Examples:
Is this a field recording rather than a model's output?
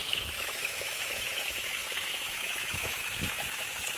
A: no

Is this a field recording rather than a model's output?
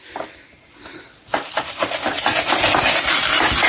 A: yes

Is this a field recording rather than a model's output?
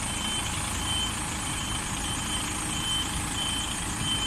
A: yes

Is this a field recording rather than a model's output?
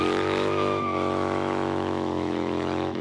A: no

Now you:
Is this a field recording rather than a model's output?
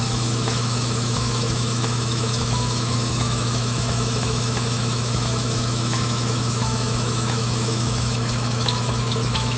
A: no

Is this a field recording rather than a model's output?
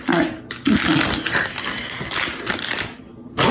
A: yes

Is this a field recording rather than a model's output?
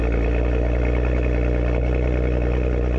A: yes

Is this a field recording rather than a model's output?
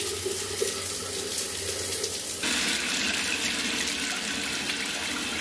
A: yes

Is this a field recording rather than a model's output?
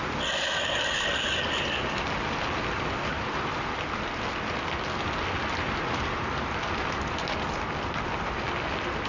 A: yes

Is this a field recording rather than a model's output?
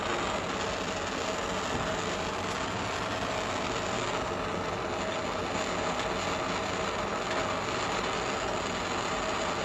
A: yes